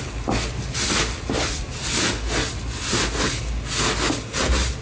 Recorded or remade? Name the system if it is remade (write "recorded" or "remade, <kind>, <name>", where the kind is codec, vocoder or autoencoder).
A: recorded